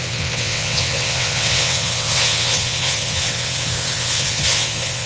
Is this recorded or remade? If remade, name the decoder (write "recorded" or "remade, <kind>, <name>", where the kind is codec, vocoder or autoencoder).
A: remade, vocoder, WaveNeXt